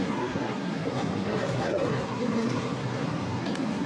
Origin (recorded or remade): remade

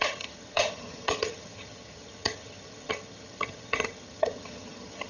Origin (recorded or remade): remade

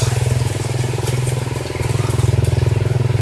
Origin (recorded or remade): recorded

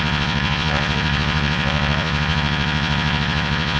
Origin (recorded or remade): remade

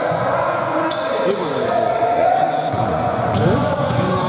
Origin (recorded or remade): remade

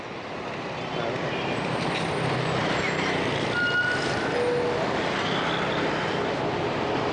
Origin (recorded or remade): recorded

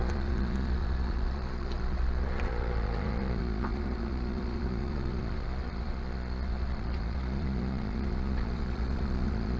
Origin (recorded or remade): remade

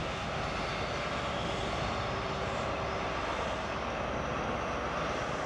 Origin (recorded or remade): recorded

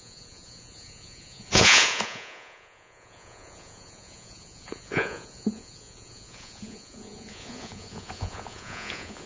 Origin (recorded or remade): remade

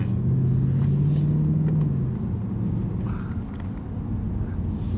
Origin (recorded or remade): recorded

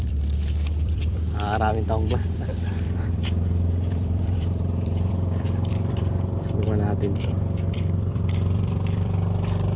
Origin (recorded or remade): remade